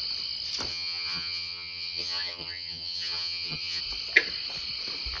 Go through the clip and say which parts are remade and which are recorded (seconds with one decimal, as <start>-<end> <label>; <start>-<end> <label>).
0.0-0.7 recorded; 0.7-3.8 remade; 3.8-5.2 recorded